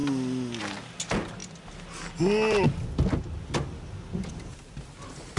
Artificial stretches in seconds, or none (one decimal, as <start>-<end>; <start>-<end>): none